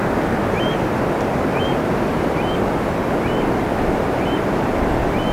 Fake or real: real